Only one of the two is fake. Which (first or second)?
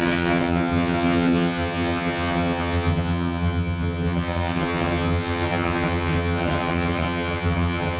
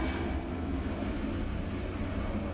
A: first